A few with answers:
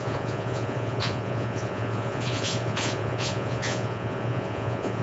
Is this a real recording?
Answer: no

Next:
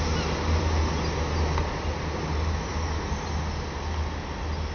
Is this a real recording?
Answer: yes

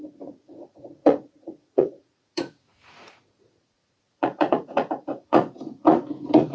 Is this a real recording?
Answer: no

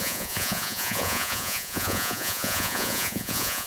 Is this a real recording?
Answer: no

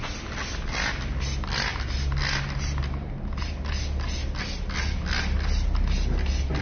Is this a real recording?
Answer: yes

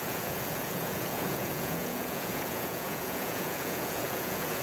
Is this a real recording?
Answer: no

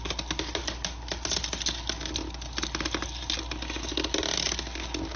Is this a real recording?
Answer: yes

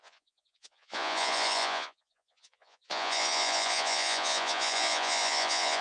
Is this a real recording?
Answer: no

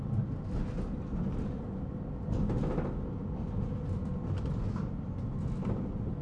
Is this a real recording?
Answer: yes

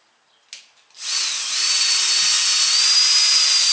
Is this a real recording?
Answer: yes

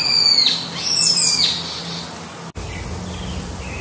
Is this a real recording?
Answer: yes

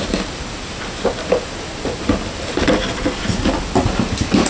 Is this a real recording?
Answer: yes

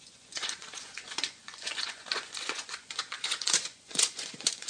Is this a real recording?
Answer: no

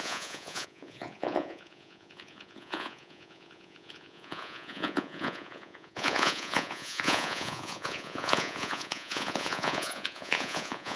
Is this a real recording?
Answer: no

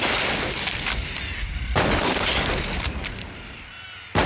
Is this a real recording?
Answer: yes